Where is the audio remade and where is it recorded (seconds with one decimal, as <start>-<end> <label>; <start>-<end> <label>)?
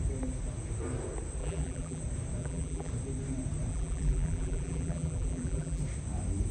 0.0-1.4 recorded; 1.4-2.0 remade; 2.0-2.4 recorded; 2.4-2.9 remade; 2.9-3.7 recorded; 3.7-5.8 remade; 5.8-6.5 recorded